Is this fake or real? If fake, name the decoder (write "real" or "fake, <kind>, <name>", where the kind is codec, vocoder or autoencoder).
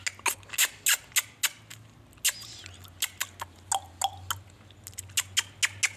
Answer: real